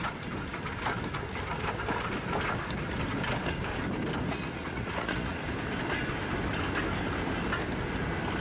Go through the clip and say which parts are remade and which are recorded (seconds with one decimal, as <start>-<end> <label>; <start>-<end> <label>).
0.0-4.3 recorded; 4.3-5.4 remade; 5.4-8.4 recorded

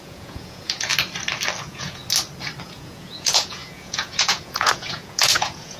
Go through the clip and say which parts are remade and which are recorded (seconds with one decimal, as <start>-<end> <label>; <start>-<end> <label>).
0.0-0.9 remade; 0.9-1.6 recorded; 1.6-2.0 remade; 2.0-2.6 recorded; 2.6-5.8 remade

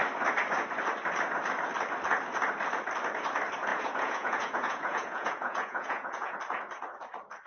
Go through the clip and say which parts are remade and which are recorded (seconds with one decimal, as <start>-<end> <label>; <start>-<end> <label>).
0.0-3.7 recorded; 3.7-6.4 remade; 6.4-7.5 recorded

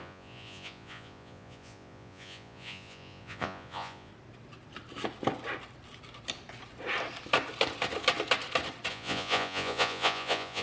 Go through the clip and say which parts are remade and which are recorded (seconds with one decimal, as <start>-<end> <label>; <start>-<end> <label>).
0.0-4.1 remade; 4.1-8.9 recorded; 8.9-10.6 remade

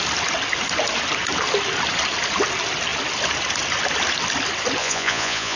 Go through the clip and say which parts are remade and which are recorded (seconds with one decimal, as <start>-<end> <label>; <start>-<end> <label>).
0.0-4.8 recorded; 4.8-5.6 remade

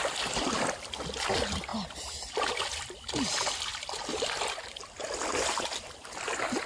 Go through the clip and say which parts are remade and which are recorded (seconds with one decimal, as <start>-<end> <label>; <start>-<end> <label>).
0.0-6.7 recorded

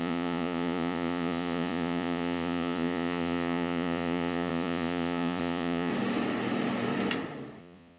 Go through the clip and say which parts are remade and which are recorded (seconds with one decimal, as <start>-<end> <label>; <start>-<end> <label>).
0.0-5.9 remade; 5.9-7.6 recorded; 7.6-8.0 remade